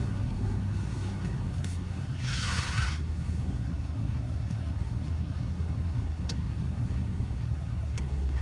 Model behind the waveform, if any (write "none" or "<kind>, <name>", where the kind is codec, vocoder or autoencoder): codec, SNAC